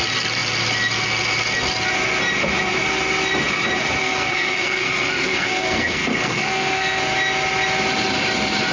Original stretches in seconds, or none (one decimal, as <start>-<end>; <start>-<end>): 0.0-4.0; 7.0-8.7